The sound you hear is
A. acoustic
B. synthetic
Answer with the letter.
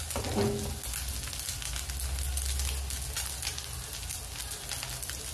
A